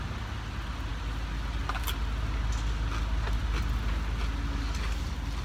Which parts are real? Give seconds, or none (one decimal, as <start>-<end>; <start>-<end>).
0.0-5.4